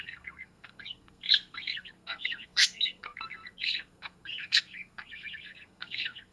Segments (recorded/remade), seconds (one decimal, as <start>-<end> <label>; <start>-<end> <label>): 0.0-6.3 remade